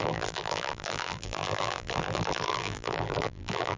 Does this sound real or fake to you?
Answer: fake